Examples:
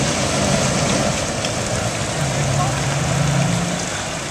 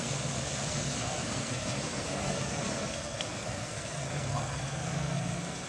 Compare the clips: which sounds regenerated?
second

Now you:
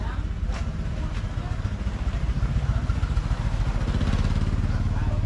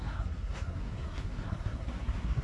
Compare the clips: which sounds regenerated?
second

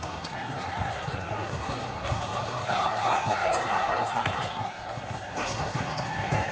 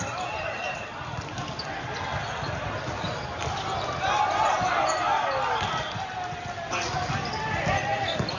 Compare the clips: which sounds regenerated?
first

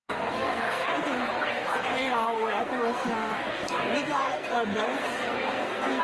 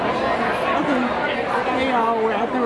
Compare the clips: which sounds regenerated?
first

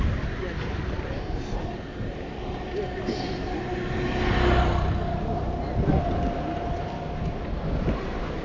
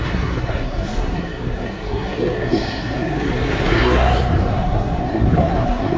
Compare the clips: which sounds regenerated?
second